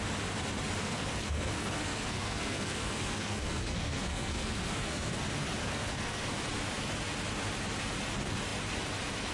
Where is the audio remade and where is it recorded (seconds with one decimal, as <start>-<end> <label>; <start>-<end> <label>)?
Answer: 0.0-0.8 recorded; 0.8-5.1 remade; 5.1-5.6 recorded; 5.6-6.3 remade; 6.3-9.3 recorded